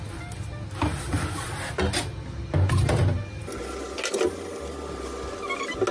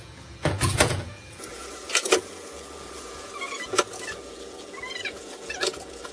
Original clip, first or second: first